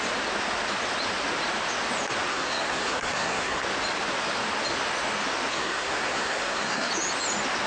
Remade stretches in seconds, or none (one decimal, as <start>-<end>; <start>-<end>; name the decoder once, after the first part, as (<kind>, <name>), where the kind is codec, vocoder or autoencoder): 2.3-3.6 (codec, SNAC); 5.5-6.9